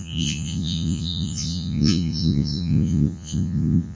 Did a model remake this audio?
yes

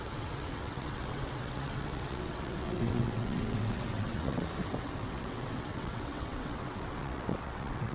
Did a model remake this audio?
yes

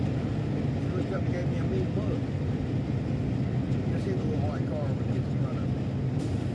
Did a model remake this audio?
no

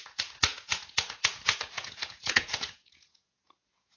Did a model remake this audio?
yes